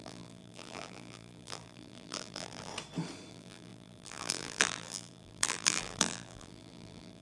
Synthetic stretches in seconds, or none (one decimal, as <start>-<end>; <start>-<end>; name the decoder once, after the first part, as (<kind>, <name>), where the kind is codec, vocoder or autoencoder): 0.0-2.7 (vocoder, BigVGAN v2); 3.3-7.2

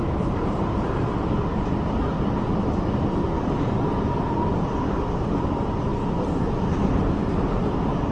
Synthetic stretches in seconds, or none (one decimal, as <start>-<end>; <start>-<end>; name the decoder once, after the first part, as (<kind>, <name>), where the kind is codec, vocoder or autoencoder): 0.0-2.2 (vocoder, BigVGAN v2)

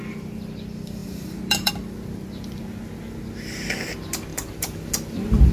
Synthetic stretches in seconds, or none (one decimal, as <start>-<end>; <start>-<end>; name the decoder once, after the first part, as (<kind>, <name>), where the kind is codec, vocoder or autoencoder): 1.0-1.7 (vocoder, BigVGAN v2); 4.3-4.9

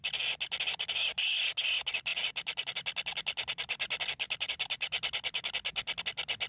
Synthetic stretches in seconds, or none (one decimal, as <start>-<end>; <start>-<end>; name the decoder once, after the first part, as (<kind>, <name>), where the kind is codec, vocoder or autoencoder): none

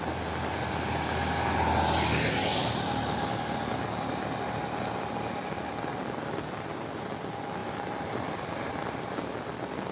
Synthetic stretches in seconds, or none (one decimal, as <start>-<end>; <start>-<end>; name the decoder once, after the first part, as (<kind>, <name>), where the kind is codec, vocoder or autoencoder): 2.6-3.7 (vocoder, BigVGAN v2); 7.6-8.7

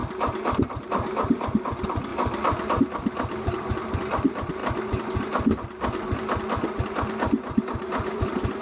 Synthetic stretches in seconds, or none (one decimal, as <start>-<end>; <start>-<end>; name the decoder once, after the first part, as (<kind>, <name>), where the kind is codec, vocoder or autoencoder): 0.9-2.1 (vocoder, BigVGAN v2); 2.8-4.6; 6.4-8.6

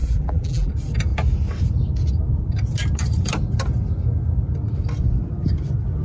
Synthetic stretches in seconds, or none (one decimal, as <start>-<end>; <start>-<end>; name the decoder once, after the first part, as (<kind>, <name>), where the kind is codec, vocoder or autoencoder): 0.0-0.7 (vocoder, BigVGAN v2)

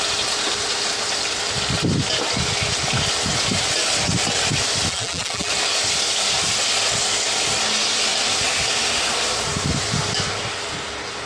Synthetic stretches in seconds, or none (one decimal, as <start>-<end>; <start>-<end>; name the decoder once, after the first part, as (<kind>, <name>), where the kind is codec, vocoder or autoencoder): 4.9-5.5 (vocoder, BigVGAN v2)